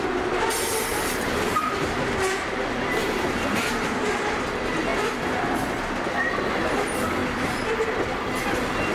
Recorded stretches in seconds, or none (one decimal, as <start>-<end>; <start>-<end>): 0.0-0.9; 1.5-3.0; 4.0-8.9